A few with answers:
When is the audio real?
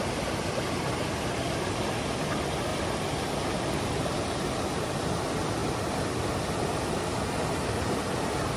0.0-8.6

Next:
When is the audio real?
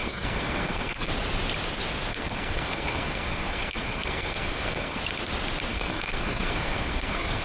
1.1-2.1; 5.0-5.7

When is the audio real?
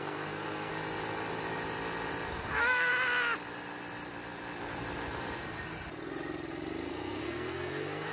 0.7-2.3; 2.9-6.9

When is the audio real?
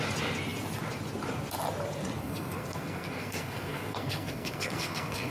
0.0-2.2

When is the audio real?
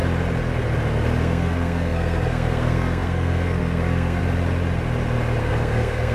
0.0-1.2; 4.2-5.4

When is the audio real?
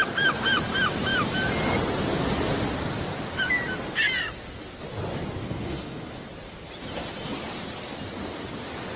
0.0-5.4; 6.1-9.0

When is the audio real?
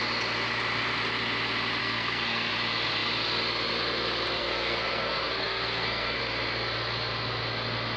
0.0-1.8; 2.5-4.4; 6.2-8.0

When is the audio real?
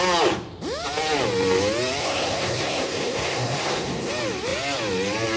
0.0-2.0; 4.1-5.4